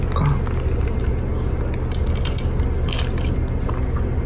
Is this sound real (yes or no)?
yes